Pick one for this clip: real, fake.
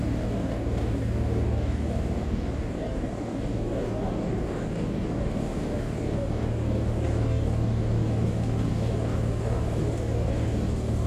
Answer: fake